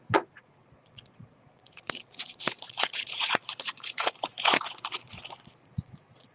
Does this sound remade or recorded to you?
remade